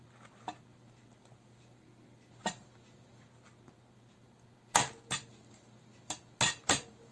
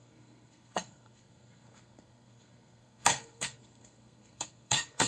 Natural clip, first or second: first